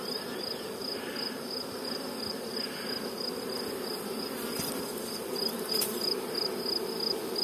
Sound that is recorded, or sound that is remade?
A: recorded